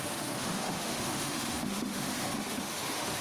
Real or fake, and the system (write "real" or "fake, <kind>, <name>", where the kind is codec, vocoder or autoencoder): fake, autoencoder, DAC-VAE